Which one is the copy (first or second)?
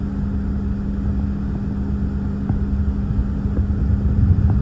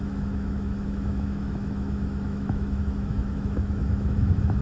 second